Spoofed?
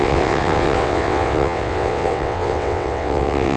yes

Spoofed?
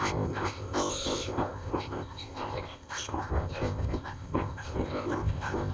yes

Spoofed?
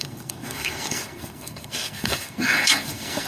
yes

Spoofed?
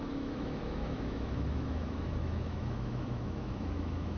yes